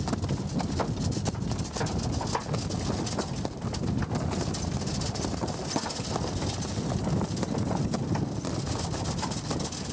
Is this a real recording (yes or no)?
yes